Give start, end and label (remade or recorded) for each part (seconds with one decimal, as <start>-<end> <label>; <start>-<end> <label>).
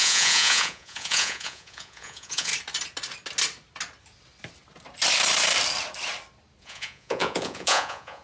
0.0-2.5 remade; 2.5-6.6 recorded; 6.6-8.2 remade